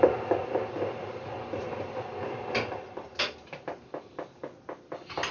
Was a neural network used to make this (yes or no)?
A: no